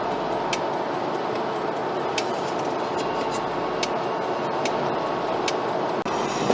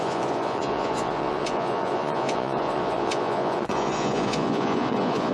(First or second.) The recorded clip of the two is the first